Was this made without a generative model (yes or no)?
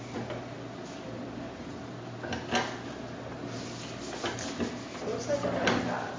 yes